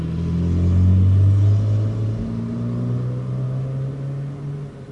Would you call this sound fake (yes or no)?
no